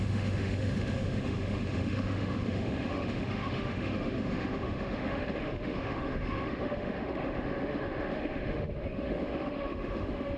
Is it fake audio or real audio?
fake